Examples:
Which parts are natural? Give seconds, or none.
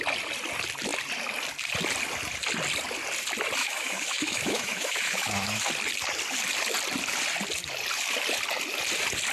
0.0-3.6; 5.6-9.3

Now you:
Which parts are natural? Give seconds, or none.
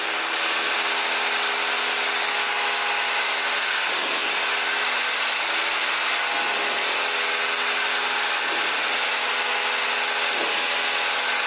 0.0-11.5